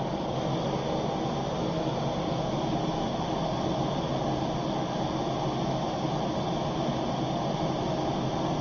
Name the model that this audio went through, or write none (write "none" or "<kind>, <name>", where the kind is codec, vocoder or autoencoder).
none